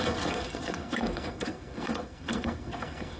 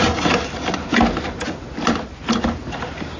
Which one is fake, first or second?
first